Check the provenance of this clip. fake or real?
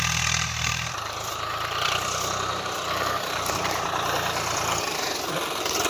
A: fake